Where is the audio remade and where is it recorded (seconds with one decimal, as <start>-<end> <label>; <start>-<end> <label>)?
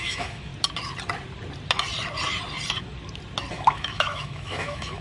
0.0-0.5 remade; 0.5-3.5 recorded; 3.5-5.0 remade